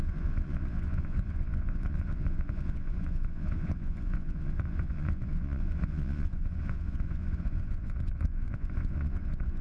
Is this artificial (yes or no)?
yes